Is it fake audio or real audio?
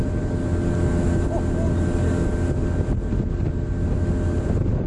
real